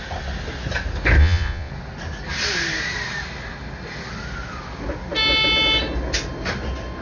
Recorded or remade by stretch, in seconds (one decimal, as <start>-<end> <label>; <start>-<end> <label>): 0.0-1.2 recorded; 1.2-1.7 remade; 1.7-7.0 recorded